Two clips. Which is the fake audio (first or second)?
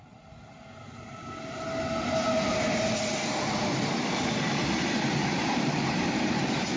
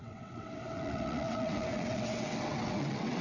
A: second